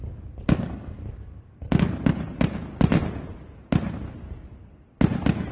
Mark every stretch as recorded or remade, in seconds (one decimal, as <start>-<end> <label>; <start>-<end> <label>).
0.0-5.5 recorded